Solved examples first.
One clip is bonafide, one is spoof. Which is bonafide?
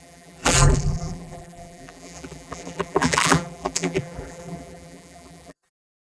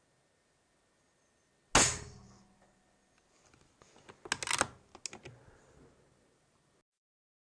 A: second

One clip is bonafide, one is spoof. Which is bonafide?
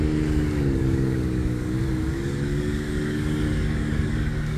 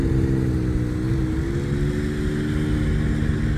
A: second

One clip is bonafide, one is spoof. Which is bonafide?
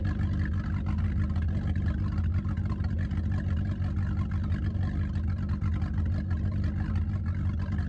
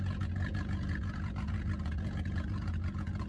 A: first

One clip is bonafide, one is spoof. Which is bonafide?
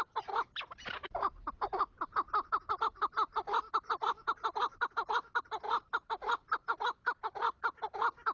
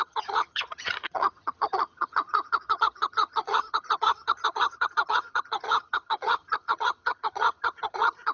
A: first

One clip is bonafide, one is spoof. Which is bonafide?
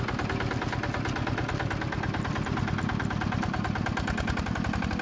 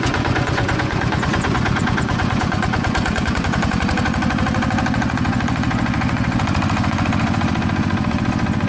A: first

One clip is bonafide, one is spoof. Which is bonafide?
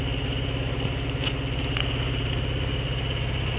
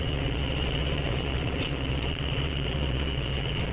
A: first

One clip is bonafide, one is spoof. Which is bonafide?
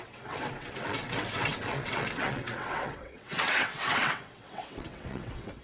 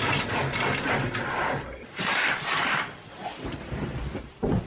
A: second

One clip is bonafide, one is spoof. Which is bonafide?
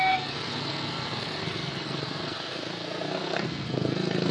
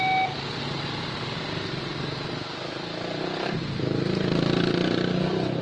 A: second